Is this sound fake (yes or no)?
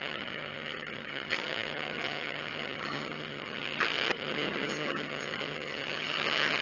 yes